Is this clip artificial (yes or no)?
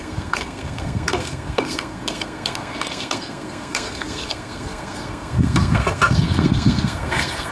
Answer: yes